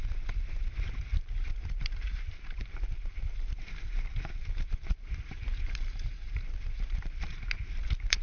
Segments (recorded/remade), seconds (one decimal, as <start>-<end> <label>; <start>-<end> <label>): 0.0-1.1 recorded; 1.1-3.6 remade; 3.6-4.4 recorded; 4.4-7.3 remade; 7.3-8.2 recorded